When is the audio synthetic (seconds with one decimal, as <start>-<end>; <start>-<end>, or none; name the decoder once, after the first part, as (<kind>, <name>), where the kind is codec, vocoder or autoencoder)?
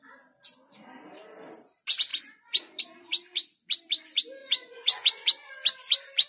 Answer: 2.1-2.8 (vocoder, Vocos); 4.4-5.5